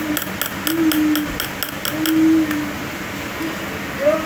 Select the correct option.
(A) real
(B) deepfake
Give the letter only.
A